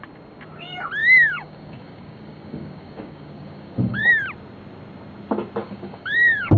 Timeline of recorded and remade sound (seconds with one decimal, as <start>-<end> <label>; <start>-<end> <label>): 0.0-1.0 recorded; 1.0-4.1 remade; 4.1-5.6 recorded; 5.6-6.6 remade